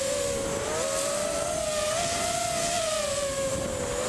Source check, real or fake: real